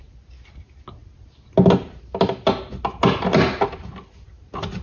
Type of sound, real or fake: real